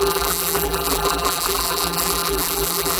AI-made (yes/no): yes